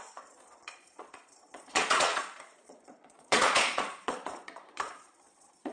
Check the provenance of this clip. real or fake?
fake